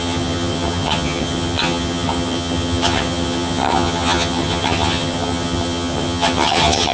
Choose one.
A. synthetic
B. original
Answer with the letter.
A